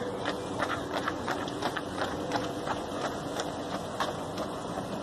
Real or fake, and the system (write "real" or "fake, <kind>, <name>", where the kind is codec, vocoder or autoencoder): fake, vocoder, Vocos